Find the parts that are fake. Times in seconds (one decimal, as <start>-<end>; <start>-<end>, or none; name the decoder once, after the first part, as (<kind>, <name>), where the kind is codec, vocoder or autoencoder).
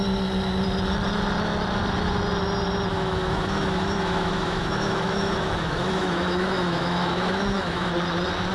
2.9-7.9 (autoencoder, DAC-VAE)